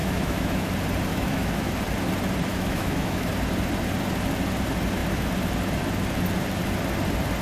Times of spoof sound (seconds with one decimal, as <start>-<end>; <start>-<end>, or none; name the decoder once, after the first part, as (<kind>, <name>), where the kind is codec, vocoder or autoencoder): 0.0-0.7 (autoencoder, DAC-VAE); 1.1-1.7; 2.5-3.3